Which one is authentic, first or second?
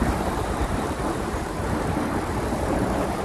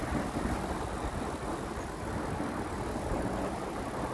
second